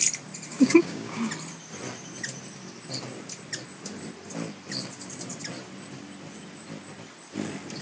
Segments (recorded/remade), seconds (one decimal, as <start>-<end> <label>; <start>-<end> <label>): 0.0-0.5 recorded; 0.5-1.3 remade; 1.3-7.8 recorded